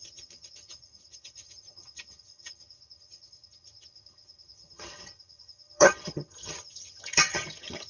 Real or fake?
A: fake